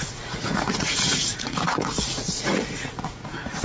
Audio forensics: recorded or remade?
remade